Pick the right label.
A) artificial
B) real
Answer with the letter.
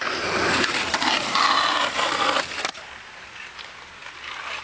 B